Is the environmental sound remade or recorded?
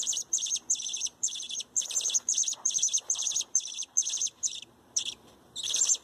remade